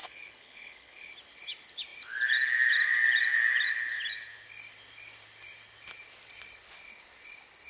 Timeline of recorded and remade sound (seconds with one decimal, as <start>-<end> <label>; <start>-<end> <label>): 0.0-1.1 remade; 1.1-7.7 recorded